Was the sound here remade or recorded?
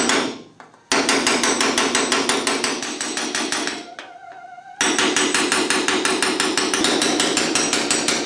recorded